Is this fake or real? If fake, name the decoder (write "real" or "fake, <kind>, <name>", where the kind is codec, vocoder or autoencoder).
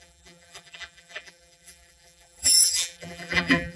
fake, vocoder, BigVGAN v2